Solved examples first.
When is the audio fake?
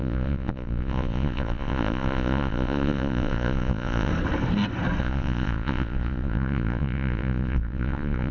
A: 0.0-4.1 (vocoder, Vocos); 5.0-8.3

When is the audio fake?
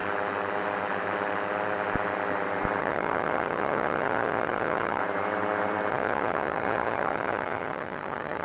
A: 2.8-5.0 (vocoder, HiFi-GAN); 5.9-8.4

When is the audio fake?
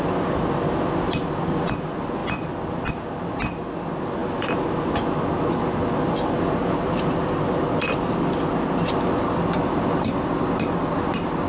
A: none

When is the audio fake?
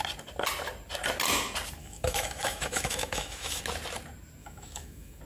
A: 1.8-3.6 (autoencoder, DAC-VAE); 4.4-5.2